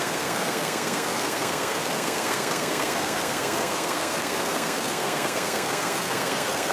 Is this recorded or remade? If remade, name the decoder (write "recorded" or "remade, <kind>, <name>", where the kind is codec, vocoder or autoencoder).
remade, codec, SNAC